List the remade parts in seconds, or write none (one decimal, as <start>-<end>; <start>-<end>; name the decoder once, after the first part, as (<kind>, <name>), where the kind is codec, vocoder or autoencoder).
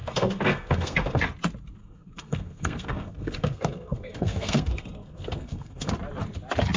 0.0-1.2 (codec, SNAC); 1.8-5.9